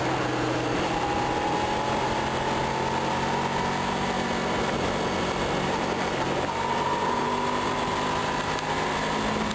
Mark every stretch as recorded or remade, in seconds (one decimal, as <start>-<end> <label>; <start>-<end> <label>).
0.0-9.5 recorded